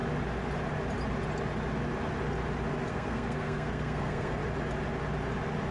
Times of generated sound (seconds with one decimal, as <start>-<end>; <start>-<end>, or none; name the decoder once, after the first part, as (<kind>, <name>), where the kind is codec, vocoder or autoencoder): 2.9-4.4 (codec, SNAC)